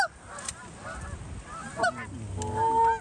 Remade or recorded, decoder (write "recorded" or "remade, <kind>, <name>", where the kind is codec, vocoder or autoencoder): recorded